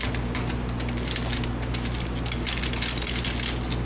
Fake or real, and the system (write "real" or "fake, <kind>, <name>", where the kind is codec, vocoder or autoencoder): real